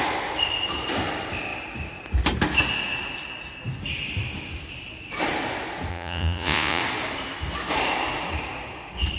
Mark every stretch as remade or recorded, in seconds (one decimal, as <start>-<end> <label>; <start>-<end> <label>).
0.0-5.9 recorded; 5.9-6.8 remade; 6.8-9.2 recorded